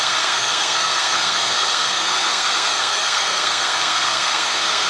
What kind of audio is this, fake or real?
fake